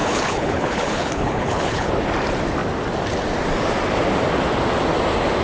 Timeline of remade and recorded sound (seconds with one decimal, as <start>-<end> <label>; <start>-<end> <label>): 0.0-1.9 remade; 1.9-5.4 recorded